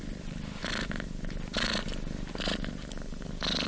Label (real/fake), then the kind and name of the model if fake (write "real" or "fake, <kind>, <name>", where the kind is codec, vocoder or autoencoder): real